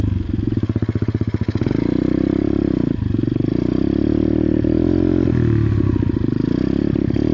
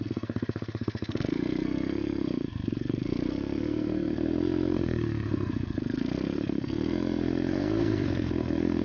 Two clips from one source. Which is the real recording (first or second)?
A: first